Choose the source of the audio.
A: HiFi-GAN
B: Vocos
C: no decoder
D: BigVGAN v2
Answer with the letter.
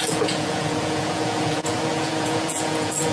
B